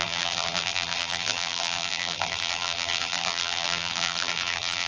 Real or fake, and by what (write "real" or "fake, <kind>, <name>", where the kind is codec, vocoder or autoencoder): fake, vocoder, BigVGAN v2